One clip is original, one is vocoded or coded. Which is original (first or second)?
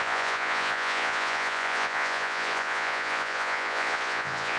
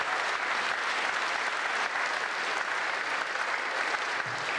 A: second